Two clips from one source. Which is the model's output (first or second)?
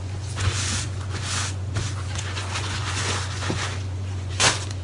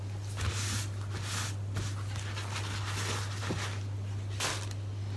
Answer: first